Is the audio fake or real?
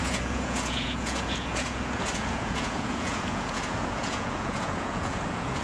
fake